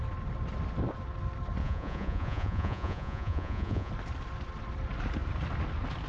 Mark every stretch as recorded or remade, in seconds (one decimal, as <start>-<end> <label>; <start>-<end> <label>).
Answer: 0.0-1.6 recorded; 1.6-3.9 remade; 3.9-6.1 recorded